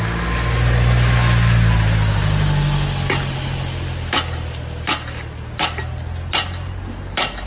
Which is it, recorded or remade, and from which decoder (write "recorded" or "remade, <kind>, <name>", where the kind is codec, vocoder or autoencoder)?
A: recorded